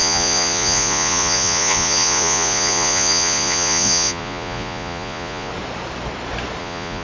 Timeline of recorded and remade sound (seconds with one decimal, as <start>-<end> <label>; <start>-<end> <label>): 0.0-5.5 remade; 5.5-6.6 recorded; 6.6-7.0 remade